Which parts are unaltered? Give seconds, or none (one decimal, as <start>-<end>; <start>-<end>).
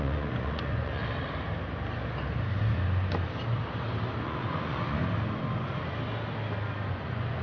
1.0-4.2; 5.0-6.9